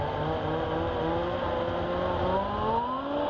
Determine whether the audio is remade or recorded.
recorded